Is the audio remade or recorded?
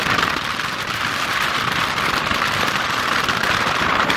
remade